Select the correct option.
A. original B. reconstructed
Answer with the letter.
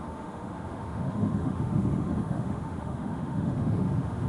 B